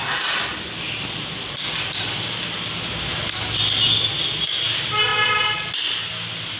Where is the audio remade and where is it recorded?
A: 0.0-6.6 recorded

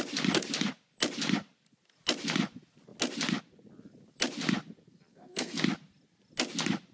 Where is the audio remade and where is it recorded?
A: 0.0-5.1 recorded; 5.1-5.6 remade; 5.6-6.9 recorded

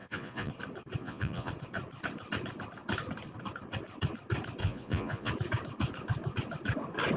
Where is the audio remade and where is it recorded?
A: 0.0-0.5 remade; 0.5-1.0 recorded; 1.0-1.5 remade; 1.5-4.6 recorded; 4.6-5.3 remade; 5.3-7.2 recorded

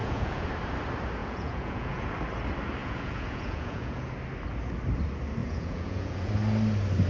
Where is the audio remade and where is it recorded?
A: 0.0-0.5 remade; 0.5-1.2 recorded; 1.2-2.1 remade; 2.1-2.8 recorded; 2.8-4.1 remade; 4.1-5.4 recorded; 5.4-6.3 remade; 6.3-7.1 recorded

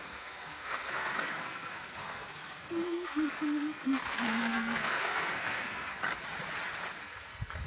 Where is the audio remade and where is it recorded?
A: 0.0-6.0 remade; 6.0-7.0 recorded; 7.0-7.7 remade

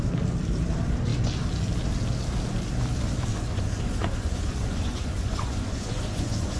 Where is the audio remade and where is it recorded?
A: 0.0-3.3 recorded; 3.3-6.6 remade